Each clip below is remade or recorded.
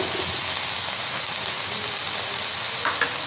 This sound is recorded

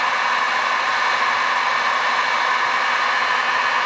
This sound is recorded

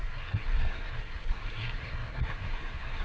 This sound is remade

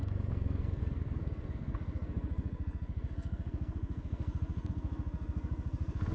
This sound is remade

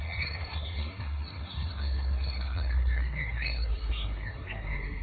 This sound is remade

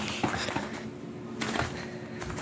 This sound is recorded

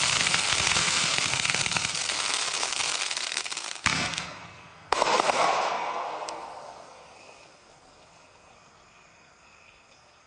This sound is remade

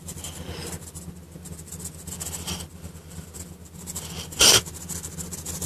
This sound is recorded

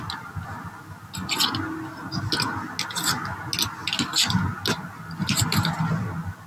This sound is recorded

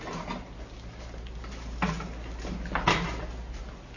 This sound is recorded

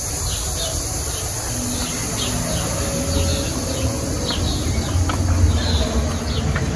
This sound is recorded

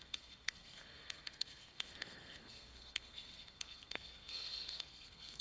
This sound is remade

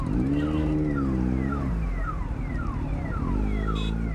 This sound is recorded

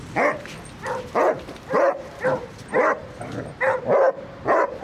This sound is recorded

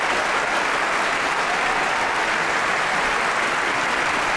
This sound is recorded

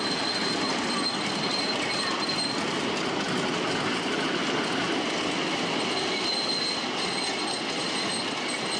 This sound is recorded